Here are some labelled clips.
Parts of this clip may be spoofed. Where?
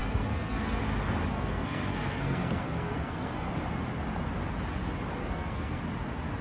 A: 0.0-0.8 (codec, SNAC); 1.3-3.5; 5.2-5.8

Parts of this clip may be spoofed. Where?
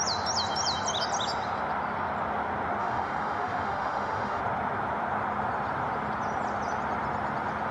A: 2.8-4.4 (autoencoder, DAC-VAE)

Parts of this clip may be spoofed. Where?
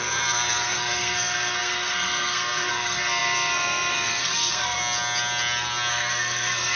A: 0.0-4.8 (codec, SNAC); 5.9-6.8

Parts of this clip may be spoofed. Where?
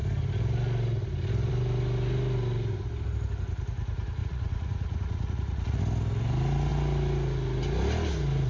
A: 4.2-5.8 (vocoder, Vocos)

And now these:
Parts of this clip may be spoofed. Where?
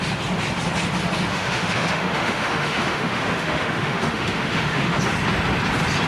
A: 1.3-5.0 (autoencoder, DAC-VAE)